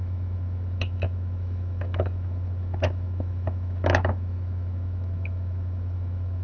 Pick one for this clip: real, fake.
fake